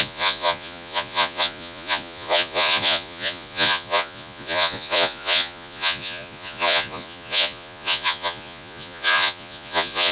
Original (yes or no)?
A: no